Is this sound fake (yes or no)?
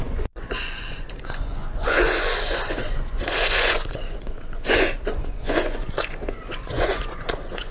yes